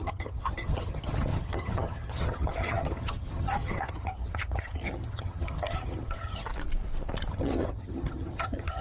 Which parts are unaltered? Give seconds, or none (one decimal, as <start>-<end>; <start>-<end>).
6.5-7.3